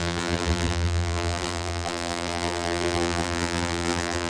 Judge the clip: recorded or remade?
remade